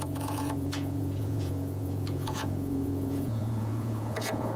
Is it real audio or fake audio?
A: fake